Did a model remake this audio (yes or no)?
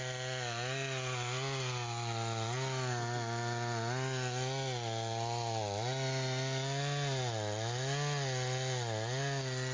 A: no